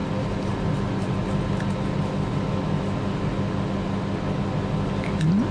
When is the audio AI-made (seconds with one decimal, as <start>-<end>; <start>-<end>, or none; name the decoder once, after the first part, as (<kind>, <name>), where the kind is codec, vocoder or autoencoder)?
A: none